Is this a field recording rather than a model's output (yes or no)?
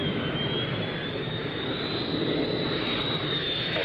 yes